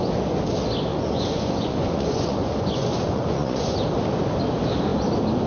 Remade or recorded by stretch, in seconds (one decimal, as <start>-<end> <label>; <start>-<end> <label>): 0.0-0.9 recorded; 0.9-3.8 remade; 3.8-5.5 recorded